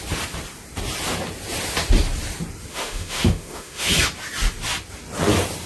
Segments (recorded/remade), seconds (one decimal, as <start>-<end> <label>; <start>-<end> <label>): 0.0-2.7 recorded; 2.7-3.9 remade; 3.9-5.7 recorded